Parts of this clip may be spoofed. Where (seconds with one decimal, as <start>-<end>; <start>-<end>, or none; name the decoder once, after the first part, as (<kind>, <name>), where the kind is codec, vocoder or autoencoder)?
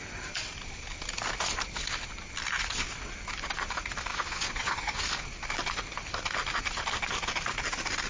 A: 4.1-5.0 (vocoder, Vocos)